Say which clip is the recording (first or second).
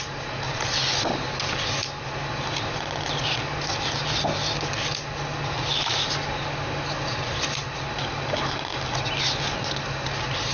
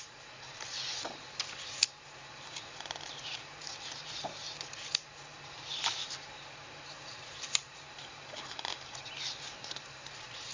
first